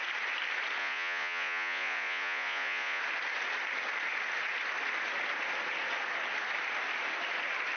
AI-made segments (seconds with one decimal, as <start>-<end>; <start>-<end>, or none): 0.8-3.0